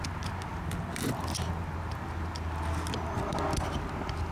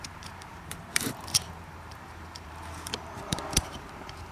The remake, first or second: second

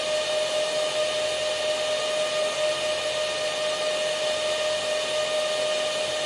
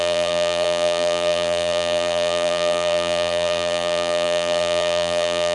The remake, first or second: second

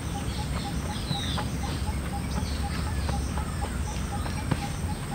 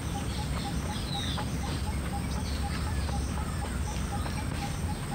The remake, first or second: second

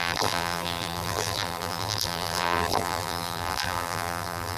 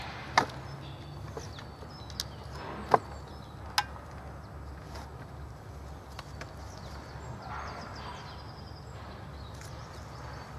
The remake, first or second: first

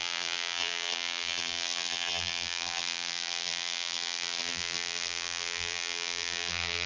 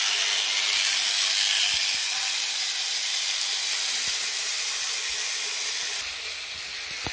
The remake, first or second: first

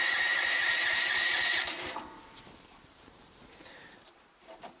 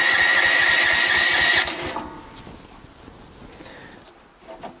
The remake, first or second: first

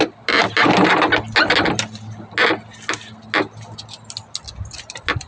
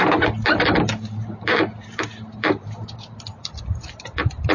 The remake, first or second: second